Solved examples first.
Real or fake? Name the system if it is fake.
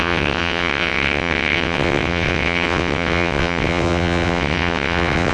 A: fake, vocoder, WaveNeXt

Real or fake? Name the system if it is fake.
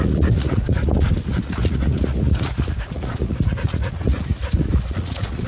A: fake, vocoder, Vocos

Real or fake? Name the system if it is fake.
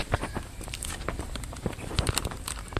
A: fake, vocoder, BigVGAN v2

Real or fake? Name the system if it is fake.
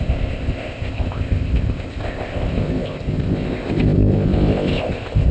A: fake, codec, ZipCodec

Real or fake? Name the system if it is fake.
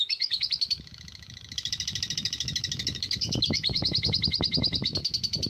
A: fake, autoencoder, DAC-VAE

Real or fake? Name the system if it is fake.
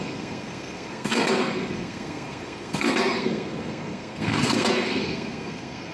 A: fake, codec, SNAC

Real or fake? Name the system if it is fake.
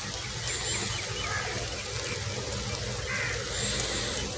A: real